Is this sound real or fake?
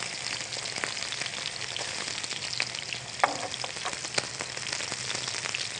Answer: real